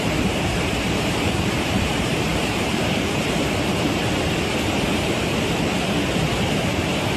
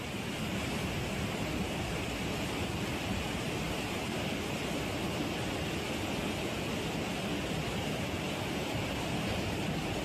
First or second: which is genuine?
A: second